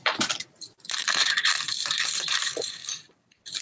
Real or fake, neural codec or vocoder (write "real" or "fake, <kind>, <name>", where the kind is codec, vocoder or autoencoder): fake, vocoder, BigVGAN v2